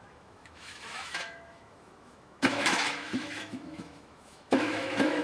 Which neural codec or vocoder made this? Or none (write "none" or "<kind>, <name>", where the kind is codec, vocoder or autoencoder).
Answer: autoencoder, DAC-VAE